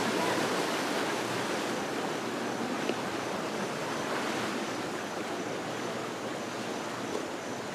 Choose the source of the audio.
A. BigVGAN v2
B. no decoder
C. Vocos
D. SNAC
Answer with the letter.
B